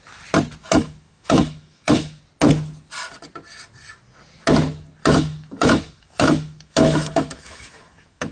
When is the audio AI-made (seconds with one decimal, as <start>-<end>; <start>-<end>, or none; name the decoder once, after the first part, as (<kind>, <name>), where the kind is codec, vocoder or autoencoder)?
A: 0.6-2.2 (autoencoder, DAC-VAE); 5.0-8.3